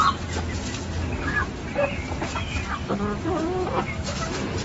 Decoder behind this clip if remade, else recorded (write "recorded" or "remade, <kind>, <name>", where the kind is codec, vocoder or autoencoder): recorded